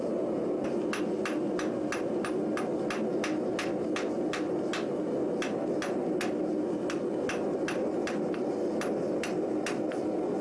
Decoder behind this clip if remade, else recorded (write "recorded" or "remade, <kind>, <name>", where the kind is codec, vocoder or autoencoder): recorded